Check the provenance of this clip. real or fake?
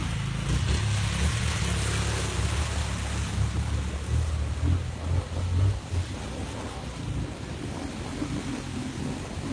real